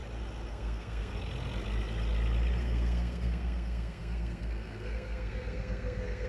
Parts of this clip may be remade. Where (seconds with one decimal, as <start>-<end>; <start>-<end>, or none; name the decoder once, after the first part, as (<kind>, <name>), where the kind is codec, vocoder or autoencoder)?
0.5-1.1 (codec, SNAC); 2.6-6.3